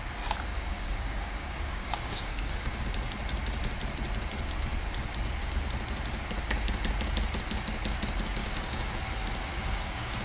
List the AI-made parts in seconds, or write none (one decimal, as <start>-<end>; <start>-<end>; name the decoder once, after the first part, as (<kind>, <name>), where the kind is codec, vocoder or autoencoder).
0.5-2.8 (codec, DAC); 8.4-8.9; 9.5-10.2